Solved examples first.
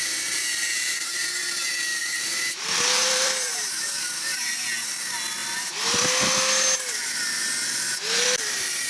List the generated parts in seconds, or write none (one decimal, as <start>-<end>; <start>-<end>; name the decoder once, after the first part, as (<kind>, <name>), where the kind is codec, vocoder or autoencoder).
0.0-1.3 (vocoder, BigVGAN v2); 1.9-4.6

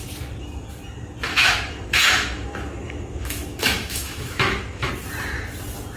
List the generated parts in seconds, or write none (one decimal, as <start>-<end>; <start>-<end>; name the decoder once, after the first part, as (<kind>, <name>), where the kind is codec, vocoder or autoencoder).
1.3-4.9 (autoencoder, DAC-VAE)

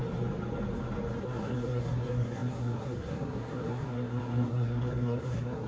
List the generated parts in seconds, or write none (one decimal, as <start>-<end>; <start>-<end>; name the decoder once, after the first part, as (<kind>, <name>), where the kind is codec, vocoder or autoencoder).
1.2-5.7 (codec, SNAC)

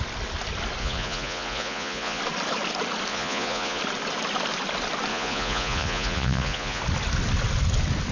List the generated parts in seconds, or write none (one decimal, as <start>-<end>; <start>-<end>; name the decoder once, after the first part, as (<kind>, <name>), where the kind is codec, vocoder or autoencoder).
0.8-2.2 (vocoder, Vocos); 3.1-3.8; 5.1-6.8

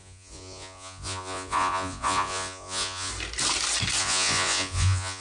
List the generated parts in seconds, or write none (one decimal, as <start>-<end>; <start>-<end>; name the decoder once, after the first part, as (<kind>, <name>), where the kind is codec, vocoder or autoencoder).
0.0-3.1 (vocoder, Vocos); 4.0-5.2